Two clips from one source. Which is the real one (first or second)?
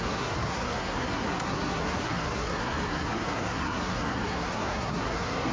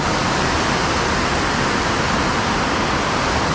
second